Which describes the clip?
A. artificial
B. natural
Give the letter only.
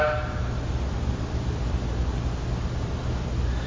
B